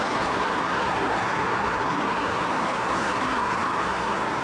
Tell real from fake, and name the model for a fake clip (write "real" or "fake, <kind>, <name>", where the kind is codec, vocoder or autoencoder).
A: fake, codec, SNAC